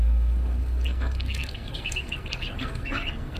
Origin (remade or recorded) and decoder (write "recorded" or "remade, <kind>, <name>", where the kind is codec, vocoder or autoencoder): remade, codec, SNAC